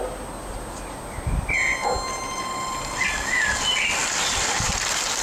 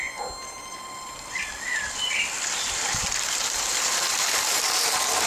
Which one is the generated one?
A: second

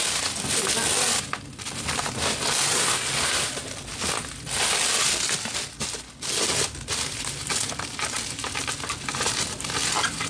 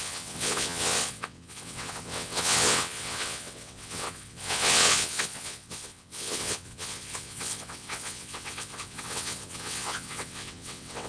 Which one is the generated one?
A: second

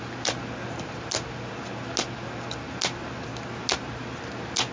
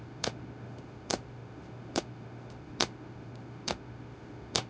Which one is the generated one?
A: second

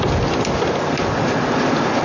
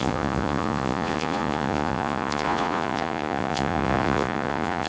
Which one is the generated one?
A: second